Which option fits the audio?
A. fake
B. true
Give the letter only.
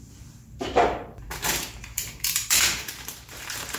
A